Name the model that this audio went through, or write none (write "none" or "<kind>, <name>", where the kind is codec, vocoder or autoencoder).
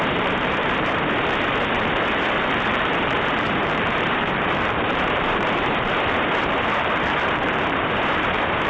vocoder, BigVGAN v2